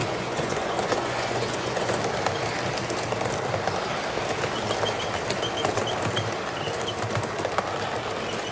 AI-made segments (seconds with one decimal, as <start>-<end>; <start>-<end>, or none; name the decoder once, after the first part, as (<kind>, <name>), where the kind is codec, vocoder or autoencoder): 0.0-2.0 (vocoder, Vocos)

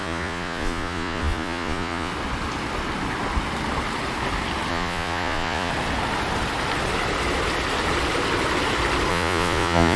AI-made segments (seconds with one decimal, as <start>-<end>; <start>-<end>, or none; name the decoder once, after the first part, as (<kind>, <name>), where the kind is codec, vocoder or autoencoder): 0.0-2.1 (vocoder, Vocos); 4.7-5.7; 9.1-10.0

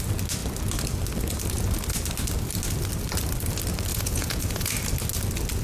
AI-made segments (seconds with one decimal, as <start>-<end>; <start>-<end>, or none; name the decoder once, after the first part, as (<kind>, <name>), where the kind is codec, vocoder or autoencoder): 3.9-4.7 (vocoder, Vocos)